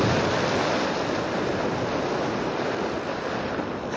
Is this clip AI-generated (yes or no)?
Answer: no